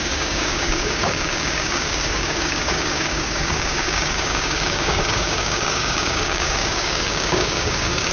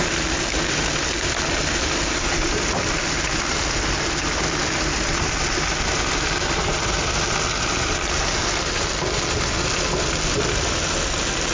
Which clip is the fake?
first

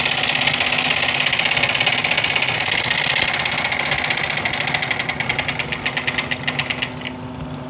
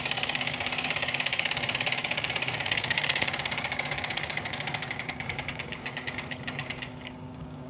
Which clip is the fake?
second